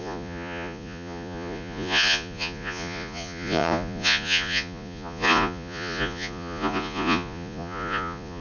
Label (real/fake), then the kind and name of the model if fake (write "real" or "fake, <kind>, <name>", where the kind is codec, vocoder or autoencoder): fake, vocoder, Vocos